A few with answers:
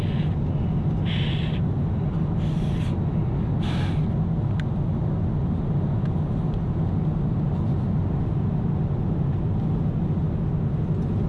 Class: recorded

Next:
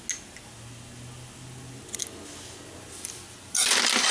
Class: recorded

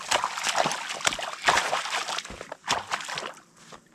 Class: recorded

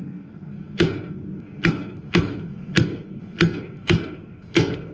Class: remade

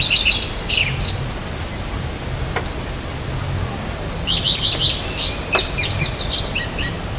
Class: recorded